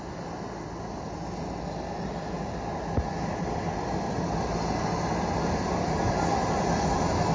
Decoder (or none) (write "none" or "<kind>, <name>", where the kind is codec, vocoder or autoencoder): none